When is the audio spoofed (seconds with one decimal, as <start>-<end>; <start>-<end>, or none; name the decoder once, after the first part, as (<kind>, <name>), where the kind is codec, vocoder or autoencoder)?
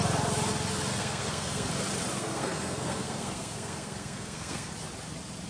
0.9-1.7 (codec, SNAC); 2.1-4.7